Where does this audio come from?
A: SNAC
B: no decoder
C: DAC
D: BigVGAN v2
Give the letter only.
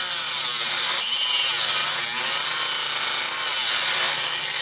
B